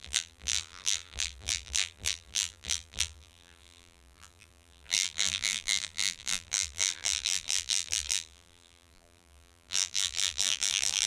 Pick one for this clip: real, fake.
fake